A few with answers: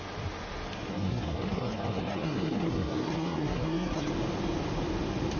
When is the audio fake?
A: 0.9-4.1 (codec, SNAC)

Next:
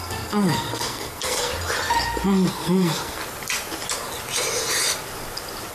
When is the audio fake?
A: 0.0-1.5 (codec, SNAC); 2.5-3.2